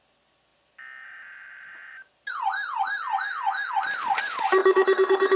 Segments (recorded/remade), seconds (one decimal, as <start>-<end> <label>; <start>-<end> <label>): 0.0-4.6 recorded; 4.6-5.4 remade